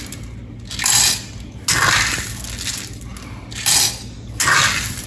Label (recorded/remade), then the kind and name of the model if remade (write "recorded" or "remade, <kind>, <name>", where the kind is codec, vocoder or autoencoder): recorded